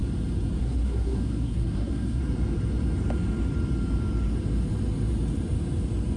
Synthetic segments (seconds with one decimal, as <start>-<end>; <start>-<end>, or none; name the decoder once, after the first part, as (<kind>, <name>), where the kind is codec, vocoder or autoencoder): 0.6-2.2 (codec, SNAC)